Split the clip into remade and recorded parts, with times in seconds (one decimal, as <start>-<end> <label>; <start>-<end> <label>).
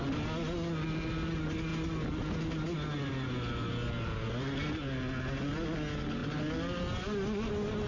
0.0-7.9 recorded